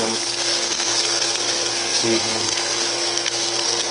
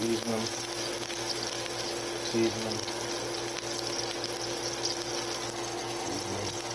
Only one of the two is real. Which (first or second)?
second